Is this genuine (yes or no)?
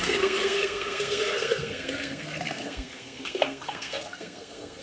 no